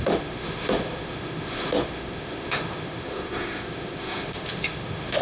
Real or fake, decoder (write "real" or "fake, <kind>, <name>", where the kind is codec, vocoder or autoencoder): fake, autoencoder, DAC-VAE